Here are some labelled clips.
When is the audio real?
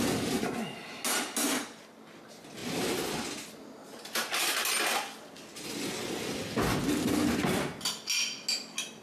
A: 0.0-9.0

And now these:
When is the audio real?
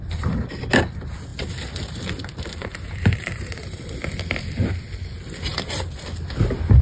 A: 0.0-1.3; 3.8-5.5; 6.0-6.8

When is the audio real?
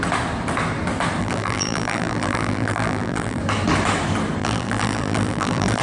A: 0.0-1.2; 3.4-4.4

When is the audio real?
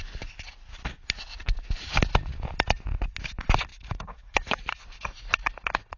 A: 0.0-3.7; 4.6-6.0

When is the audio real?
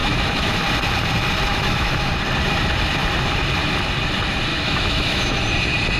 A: 0.6-1.5; 2.1-4.5; 5.4-6.0